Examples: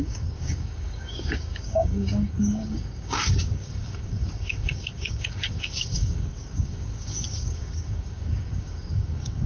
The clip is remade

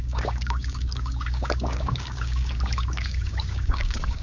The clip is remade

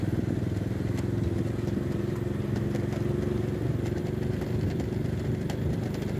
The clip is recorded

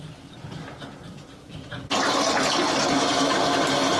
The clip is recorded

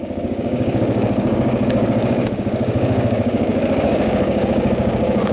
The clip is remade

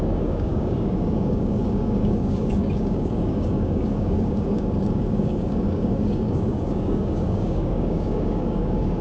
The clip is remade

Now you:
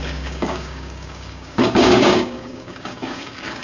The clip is remade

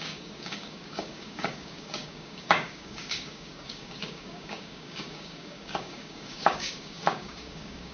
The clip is remade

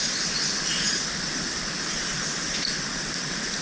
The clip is recorded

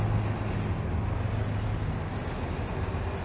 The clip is recorded